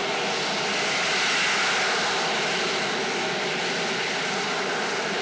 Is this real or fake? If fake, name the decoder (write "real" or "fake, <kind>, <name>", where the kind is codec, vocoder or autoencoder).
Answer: real